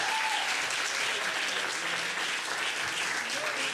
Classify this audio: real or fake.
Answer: real